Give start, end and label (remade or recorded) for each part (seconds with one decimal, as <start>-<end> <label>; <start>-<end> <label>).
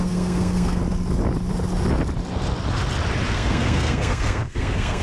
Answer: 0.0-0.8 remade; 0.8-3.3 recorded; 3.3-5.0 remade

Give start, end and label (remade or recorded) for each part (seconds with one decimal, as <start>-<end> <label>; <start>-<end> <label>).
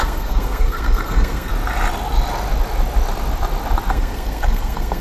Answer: 0.0-1.5 remade; 1.5-3.9 recorded; 3.9-5.0 remade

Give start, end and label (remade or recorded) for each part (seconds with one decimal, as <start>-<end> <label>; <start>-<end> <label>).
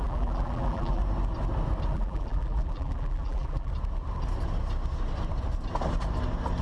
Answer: 0.0-1.0 remade; 1.0-1.9 recorded; 1.9-3.7 remade; 3.7-6.6 recorded